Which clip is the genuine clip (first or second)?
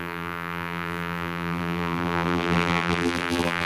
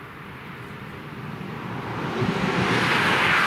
second